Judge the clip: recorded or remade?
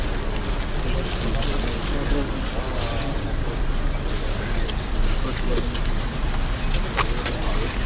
recorded